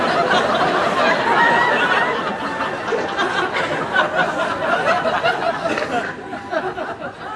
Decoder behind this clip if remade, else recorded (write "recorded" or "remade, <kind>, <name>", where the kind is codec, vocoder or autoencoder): recorded